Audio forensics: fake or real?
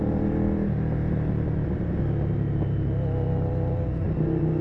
real